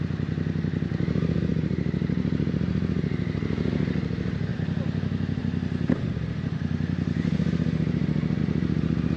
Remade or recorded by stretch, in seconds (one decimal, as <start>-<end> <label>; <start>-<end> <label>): 0.0-9.2 recorded